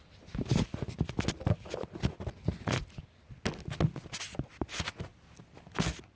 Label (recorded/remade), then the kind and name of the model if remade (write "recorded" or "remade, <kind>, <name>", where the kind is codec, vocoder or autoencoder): recorded